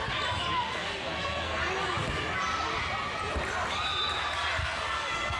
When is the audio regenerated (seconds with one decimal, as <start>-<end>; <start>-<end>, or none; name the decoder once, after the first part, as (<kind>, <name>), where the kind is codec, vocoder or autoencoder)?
0.6-1.6 (codec, SNAC); 4.6-5.4